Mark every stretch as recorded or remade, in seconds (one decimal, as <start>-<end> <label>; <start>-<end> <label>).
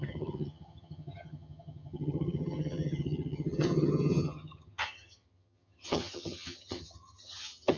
0.0-7.8 remade